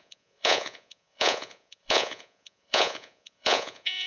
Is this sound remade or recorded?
remade